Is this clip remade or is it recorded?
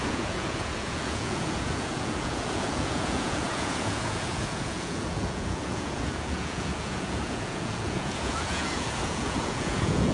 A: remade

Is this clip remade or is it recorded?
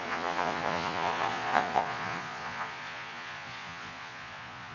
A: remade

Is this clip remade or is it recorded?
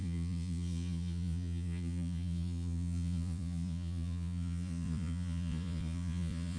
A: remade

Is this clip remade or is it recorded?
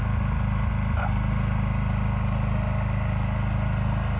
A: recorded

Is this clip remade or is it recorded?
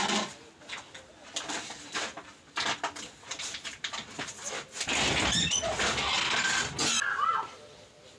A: recorded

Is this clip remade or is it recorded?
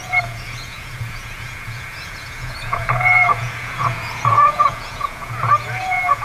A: remade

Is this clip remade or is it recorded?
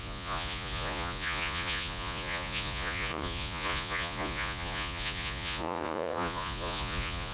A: remade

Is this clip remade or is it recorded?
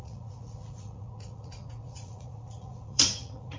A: remade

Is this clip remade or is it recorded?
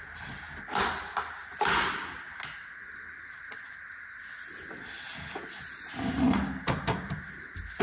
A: recorded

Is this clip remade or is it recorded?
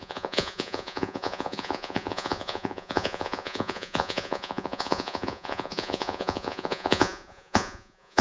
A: remade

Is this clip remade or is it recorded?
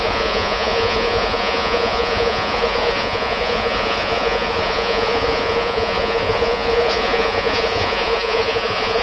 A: remade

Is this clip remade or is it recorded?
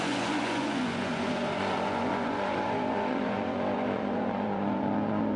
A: remade